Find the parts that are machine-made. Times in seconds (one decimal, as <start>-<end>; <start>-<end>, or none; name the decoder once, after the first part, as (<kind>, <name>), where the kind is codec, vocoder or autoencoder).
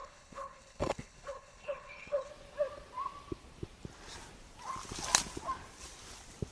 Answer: 0.0-2.3 (codec, HILCodec)